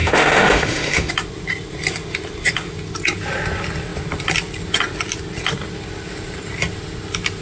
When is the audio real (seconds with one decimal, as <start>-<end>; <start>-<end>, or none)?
1.1-7.4